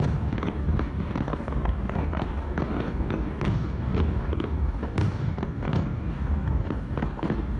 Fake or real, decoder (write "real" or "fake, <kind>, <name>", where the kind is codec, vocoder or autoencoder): fake, codec, DAC